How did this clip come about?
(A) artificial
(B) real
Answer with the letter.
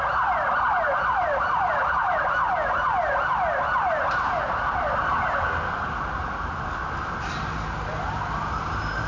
B